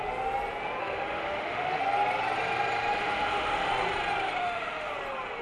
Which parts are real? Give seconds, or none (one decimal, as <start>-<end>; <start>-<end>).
0.0-0.8; 1.8-2.9; 3.7-4.4; 4.9-5.4